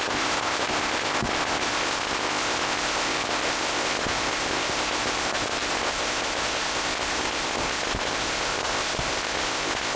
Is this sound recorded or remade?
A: remade